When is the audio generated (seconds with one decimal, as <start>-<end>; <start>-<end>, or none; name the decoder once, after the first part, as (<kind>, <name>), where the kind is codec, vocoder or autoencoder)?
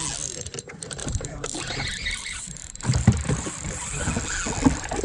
1.0-4.0 (vocoder, BigVGAN v2)